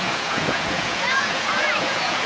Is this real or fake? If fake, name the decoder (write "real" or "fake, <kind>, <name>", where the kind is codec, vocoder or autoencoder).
fake, vocoder, Vocos